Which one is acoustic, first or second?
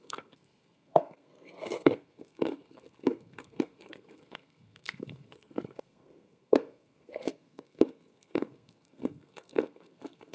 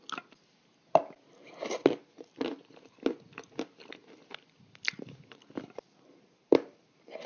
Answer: second